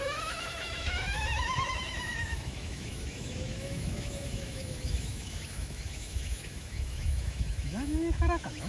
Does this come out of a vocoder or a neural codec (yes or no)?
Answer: yes